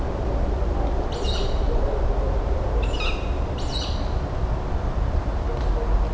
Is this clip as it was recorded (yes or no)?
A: yes